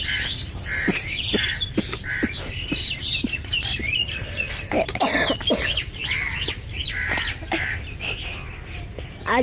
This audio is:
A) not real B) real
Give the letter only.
B